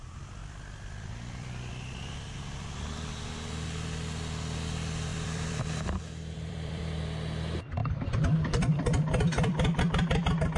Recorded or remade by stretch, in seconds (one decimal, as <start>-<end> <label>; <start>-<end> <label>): 0.0-0.4 recorded; 0.4-1.7 remade; 1.7-5.1 recorded; 5.1-6.8 remade; 6.8-7.8 recorded; 7.8-9.8 remade; 9.8-10.6 recorded